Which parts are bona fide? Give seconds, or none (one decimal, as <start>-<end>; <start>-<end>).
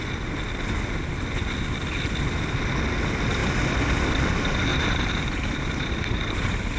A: 0.0-4.7